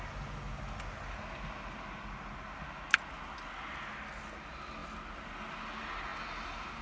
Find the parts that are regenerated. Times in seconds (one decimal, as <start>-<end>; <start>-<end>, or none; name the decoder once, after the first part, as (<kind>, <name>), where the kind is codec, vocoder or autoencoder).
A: none

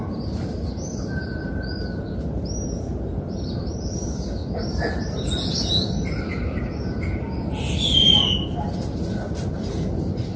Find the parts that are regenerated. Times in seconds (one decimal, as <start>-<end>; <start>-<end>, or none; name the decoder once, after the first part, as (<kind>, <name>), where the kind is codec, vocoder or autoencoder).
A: none

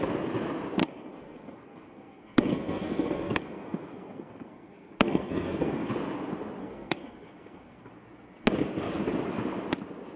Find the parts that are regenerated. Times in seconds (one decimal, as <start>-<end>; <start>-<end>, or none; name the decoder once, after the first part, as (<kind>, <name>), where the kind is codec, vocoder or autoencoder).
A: 0.8-5.9 (codec, SNAC); 6.6-7.9

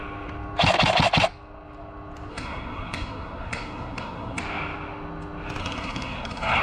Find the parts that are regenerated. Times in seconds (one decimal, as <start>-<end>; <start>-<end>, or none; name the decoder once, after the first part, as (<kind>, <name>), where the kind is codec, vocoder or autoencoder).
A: 2.3-4.4 (codec, SNAC); 5.6-6.6

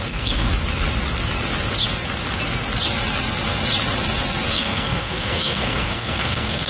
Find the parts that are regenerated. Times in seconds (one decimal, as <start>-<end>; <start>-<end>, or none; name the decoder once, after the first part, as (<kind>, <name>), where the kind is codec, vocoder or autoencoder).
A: 0.0-0.5 (codec, SNAC); 4.5-6.7

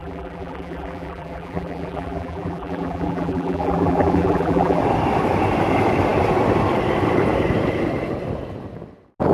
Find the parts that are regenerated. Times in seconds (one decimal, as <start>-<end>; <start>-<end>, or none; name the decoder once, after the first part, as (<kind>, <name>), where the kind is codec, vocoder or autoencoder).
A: 0.0-4.8 (vocoder, BigVGAN v2)

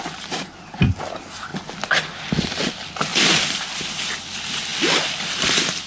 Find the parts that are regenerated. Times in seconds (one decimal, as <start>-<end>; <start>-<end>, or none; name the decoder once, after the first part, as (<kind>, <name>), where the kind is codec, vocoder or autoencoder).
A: none